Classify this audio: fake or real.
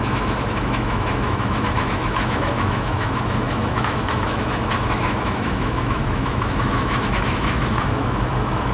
fake